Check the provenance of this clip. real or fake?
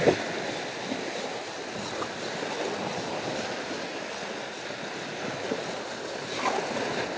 real